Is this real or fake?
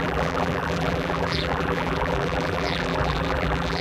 fake